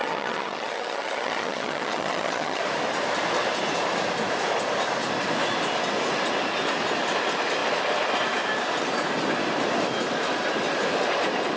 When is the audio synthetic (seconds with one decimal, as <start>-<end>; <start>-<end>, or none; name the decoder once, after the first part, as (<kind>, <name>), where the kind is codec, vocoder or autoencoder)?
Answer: 0.0-2.6 (vocoder, HiFi-GAN)